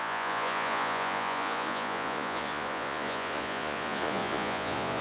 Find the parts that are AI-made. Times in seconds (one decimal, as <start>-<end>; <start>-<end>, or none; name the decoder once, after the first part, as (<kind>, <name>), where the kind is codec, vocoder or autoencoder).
0.0-5.0 (vocoder, Vocos)